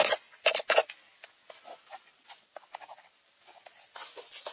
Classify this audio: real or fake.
real